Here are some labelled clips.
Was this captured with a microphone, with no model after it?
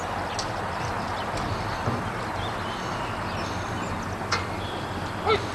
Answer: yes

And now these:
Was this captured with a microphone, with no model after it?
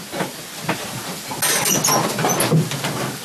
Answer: yes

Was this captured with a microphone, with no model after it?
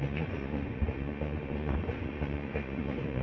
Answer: no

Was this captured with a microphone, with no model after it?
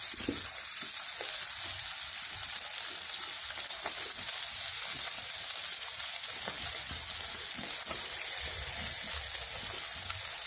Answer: yes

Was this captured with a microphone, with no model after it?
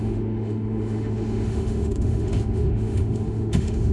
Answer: no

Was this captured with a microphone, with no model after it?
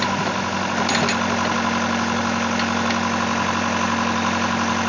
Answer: yes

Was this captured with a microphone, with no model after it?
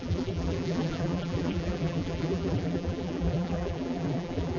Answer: no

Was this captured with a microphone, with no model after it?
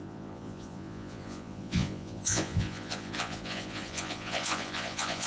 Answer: no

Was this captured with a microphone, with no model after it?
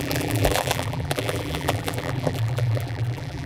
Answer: no